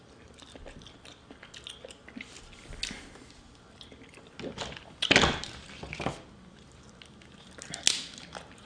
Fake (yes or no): no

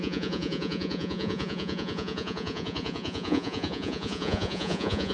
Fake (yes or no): yes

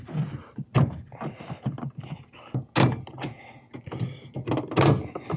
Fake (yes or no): no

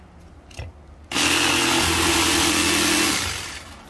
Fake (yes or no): no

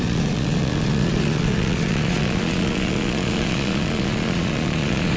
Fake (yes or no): yes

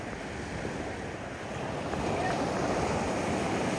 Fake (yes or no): no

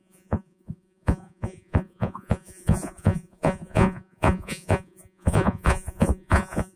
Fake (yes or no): yes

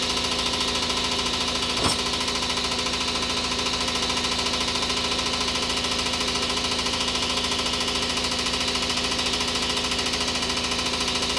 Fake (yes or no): no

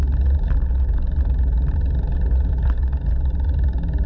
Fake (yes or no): no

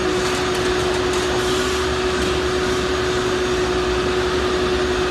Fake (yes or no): no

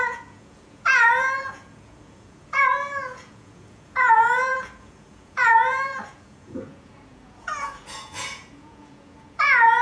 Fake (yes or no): yes